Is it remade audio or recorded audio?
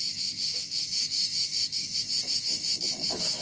remade